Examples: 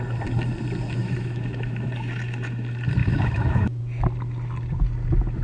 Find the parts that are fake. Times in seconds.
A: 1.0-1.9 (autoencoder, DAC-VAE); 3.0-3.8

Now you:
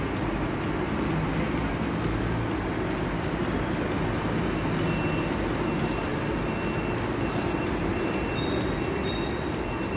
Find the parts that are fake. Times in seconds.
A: none

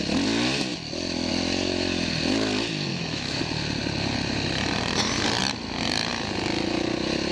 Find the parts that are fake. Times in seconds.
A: 2.9-3.4 (autoencoder, DAC-VAE)